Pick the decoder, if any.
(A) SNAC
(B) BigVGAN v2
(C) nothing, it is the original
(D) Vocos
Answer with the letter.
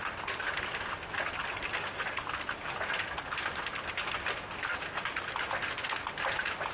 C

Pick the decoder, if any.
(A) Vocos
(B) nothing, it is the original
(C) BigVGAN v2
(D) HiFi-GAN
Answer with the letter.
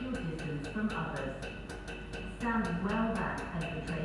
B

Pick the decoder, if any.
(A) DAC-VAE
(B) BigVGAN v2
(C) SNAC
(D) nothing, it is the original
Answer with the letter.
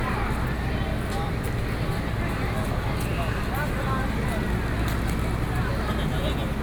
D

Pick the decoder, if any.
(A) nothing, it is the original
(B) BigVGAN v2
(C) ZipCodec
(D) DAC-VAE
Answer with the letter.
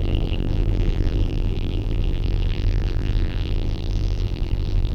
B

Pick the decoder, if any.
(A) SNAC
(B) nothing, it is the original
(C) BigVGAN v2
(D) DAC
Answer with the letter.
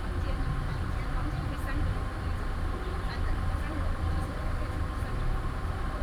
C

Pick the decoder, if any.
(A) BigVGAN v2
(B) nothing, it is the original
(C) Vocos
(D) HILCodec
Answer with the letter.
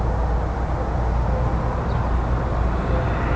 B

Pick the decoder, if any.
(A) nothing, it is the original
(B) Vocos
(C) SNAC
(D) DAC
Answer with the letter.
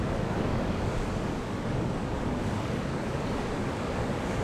D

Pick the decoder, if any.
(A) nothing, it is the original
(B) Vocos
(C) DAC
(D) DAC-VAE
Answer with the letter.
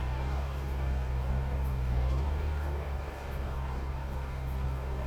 C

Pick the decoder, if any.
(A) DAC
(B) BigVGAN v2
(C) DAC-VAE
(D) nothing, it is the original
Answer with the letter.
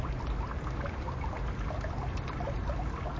D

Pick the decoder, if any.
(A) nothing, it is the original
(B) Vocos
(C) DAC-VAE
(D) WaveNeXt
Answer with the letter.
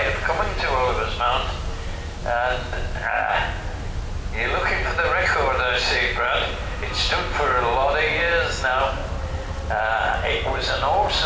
A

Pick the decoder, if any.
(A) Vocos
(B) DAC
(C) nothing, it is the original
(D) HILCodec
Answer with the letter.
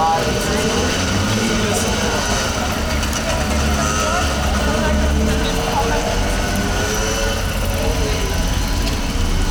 C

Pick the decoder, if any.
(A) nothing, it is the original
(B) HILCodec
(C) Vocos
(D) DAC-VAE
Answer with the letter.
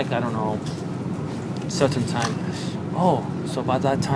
A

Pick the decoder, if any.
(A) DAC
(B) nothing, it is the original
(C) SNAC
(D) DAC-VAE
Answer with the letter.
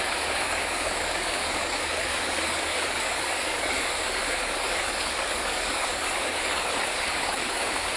A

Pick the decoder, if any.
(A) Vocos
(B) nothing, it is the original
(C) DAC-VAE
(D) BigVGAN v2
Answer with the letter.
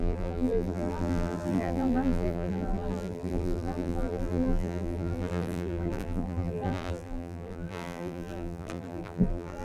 D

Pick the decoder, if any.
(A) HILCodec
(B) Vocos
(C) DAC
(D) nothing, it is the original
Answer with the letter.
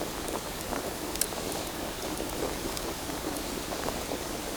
C